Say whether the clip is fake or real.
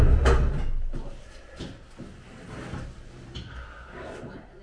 real